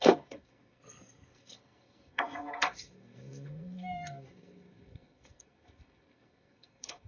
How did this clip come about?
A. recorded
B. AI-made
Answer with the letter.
B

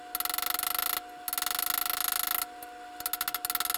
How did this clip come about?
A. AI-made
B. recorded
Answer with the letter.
B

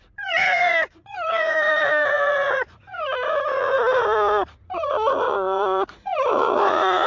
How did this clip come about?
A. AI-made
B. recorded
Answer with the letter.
A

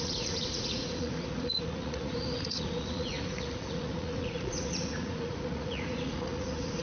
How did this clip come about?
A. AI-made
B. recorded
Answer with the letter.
A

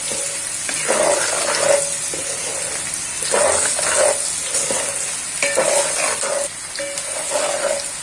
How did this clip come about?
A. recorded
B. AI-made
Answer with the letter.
A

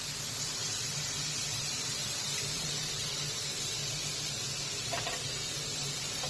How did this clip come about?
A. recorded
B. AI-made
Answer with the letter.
B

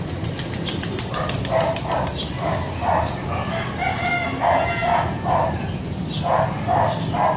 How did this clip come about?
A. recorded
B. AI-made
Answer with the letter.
A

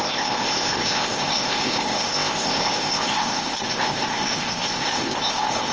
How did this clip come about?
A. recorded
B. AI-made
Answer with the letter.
B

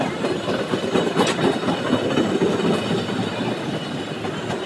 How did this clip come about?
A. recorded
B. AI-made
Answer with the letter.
A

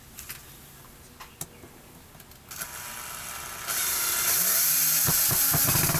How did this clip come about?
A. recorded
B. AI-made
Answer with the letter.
A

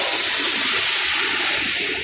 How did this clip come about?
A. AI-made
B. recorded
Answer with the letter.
B